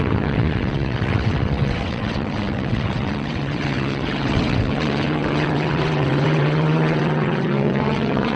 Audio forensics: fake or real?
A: fake